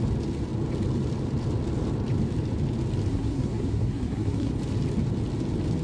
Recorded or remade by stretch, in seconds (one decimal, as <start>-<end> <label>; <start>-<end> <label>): 0.0-3.1 recorded; 3.1-4.5 remade; 4.5-5.8 recorded